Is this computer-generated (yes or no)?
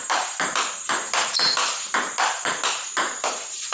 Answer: no